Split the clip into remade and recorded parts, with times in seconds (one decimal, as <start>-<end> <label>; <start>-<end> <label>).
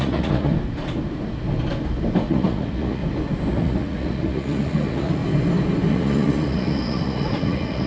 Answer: 0.0-0.5 remade; 0.5-2.3 recorded; 2.3-3.0 remade; 3.0-3.5 recorded; 3.5-5.2 remade; 5.2-5.9 recorded; 5.9-7.9 remade